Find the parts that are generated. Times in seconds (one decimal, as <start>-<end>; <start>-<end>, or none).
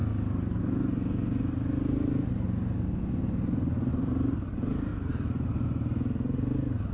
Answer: 3.9-4.9